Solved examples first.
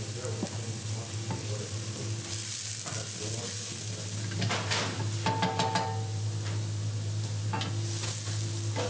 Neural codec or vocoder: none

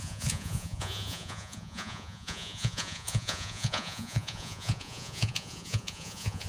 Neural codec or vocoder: vocoder, Vocos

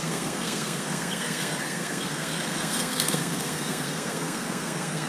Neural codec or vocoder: codec, SNAC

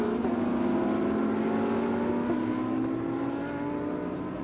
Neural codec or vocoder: none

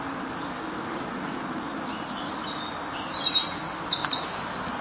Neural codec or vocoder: none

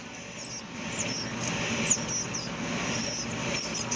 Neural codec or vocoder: none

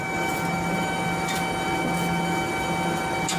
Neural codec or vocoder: none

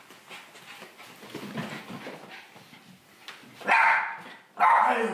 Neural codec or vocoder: none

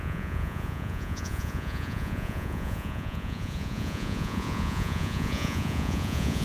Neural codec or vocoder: vocoder, Vocos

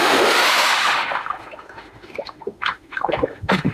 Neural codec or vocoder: autoencoder, DAC-VAE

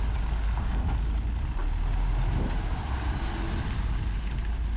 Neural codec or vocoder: none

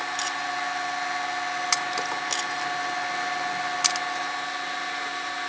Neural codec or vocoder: none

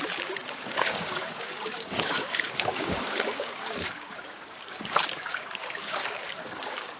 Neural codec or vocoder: codec, DAC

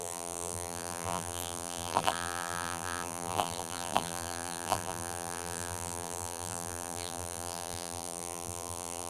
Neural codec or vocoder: vocoder, BigVGAN v2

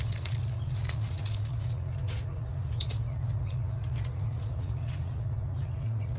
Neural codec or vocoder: vocoder, Vocos